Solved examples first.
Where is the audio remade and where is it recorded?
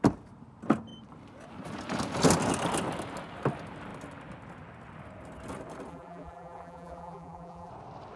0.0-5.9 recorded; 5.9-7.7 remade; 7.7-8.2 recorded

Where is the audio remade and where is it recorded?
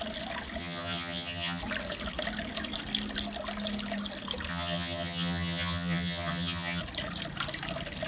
0.0-0.6 recorded; 0.6-1.6 remade; 1.6-4.5 recorded; 4.5-6.8 remade; 6.8-8.1 recorded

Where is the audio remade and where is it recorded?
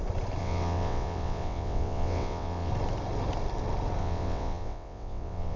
0.0-0.4 recorded; 0.4-2.7 remade; 2.7-4.0 recorded; 4.0-5.6 remade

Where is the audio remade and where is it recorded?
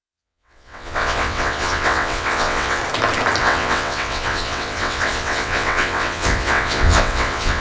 0.0-2.8 remade; 2.8-3.4 recorded; 3.4-7.6 remade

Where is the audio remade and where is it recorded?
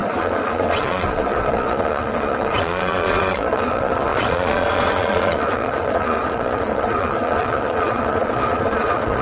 0.0-9.2 remade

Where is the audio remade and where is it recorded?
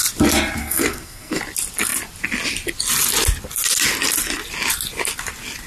0.0-0.6 recorded; 0.6-1.4 remade; 1.4-5.7 recorded